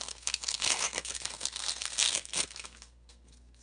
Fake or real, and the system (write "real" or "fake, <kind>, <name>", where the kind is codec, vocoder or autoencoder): fake, codec, SNAC